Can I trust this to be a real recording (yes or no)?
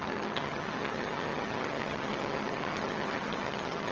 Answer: no